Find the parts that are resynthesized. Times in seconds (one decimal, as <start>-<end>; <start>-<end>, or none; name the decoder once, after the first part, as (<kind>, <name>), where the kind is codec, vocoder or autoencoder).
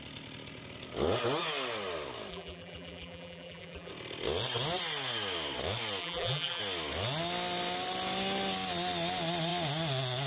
2.3-3.9 (vocoder, BigVGAN v2); 6.0-6.6